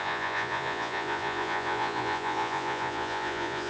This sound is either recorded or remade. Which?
remade